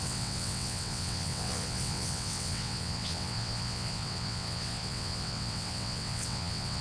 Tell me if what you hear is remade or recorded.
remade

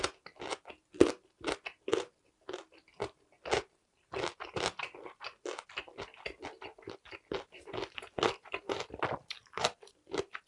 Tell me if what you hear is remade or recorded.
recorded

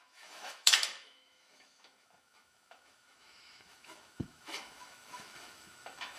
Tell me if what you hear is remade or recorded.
remade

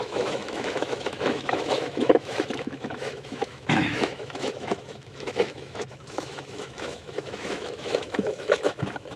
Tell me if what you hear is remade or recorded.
remade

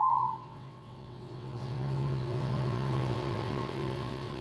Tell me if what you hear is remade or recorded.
remade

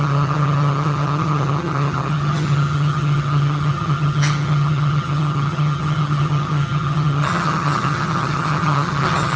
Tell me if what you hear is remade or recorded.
remade